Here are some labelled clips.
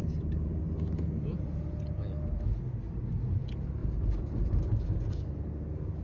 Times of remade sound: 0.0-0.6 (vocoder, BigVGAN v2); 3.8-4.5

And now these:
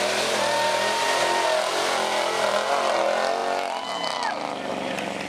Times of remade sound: none